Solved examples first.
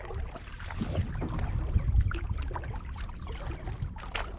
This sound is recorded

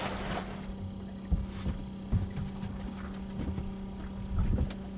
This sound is recorded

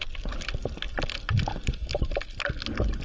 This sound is recorded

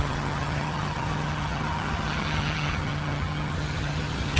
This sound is remade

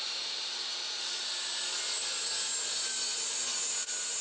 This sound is recorded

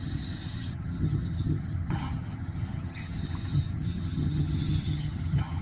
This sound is remade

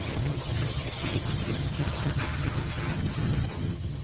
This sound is remade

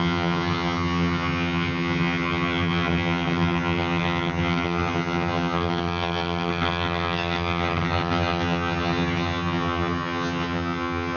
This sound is remade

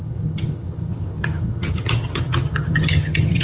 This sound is remade